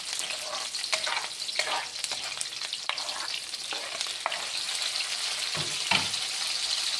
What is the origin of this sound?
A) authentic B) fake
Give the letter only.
A